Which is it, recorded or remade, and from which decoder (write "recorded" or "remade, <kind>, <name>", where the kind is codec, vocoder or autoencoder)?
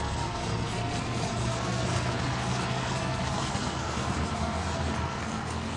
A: remade, codec, SNAC